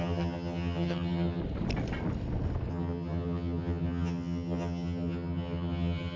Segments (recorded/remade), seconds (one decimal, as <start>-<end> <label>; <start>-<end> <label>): 0.0-1.4 remade; 1.4-2.7 recorded; 2.7-6.2 remade